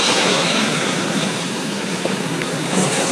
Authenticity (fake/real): fake